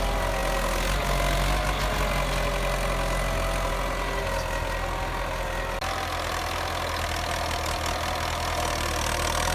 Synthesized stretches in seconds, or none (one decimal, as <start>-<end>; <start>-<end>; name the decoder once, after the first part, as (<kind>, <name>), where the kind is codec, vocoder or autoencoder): none